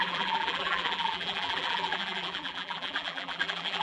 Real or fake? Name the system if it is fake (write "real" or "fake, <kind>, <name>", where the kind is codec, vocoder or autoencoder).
fake, vocoder, BigVGAN v2